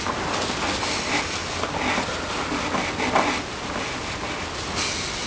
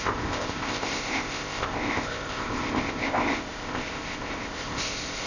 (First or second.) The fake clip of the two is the second